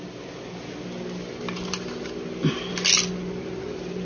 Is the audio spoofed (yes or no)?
no